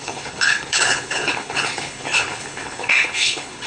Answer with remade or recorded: remade